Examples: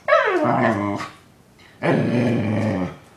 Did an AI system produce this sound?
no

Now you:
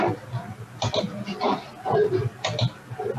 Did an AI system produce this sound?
no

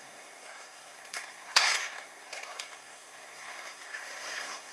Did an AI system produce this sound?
yes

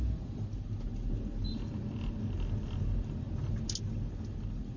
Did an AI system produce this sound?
no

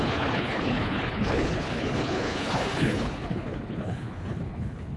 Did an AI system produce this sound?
yes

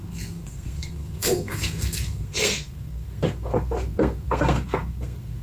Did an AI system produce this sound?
yes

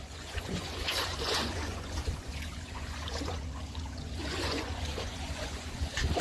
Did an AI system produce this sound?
yes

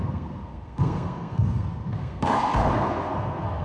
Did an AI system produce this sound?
yes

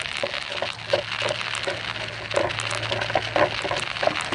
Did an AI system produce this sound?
no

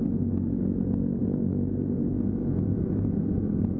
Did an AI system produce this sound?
yes